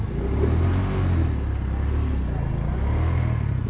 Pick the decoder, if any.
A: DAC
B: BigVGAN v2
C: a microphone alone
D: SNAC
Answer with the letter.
C